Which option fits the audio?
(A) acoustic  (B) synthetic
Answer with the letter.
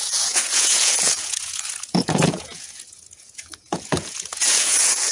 B